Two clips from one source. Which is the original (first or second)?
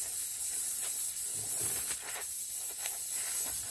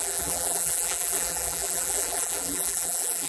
first